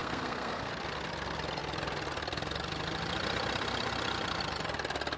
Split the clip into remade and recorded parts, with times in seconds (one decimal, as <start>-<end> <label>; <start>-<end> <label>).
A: 0.0-0.7 remade; 0.7-5.2 recorded